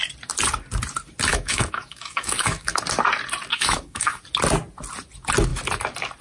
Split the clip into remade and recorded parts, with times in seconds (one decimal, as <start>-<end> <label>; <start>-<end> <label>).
0.0-1.3 recorded; 1.3-2.8 remade; 2.8-3.5 recorded; 3.5-4.2 remade; 4.2-6.2 recorded